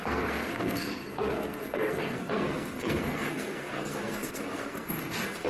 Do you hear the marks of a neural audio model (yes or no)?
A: yes